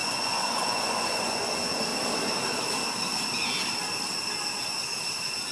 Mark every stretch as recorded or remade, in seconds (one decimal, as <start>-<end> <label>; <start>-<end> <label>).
0.0-1.9 remade; 1.9-5.5 recorded

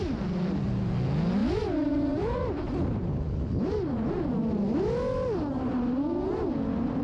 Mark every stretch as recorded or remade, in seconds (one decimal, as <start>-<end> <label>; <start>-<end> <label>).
0.0-7.0 recorded

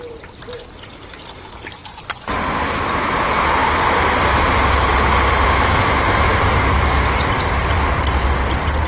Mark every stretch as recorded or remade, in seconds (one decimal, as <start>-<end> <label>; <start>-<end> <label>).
0.0-1.8 recorded; 1.8-2.4 remade; 2.4-8.9 recorded

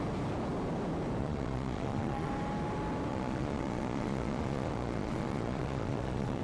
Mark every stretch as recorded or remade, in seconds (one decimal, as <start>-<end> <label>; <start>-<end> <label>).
0.0-1.2 recorded; 1.2-2.3 remade; 2.3-3.1 recorded; 3.1-6.4 remade